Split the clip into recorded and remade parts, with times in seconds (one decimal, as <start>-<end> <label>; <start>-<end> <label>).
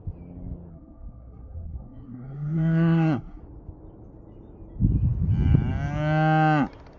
0.0-0.7 recorded; 0.7-3.4 remade; 3.4-7.0 recorded